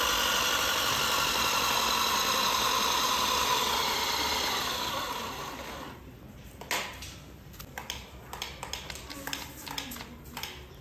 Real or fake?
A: real